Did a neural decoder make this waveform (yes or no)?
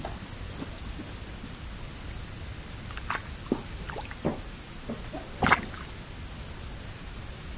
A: no